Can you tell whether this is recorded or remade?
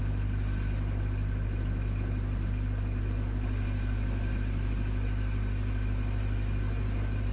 recorded